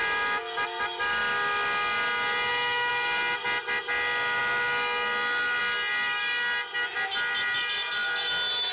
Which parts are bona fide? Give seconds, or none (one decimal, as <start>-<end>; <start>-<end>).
0.0-8.7